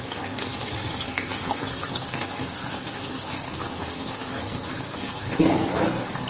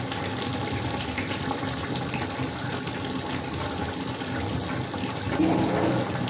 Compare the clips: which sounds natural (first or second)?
second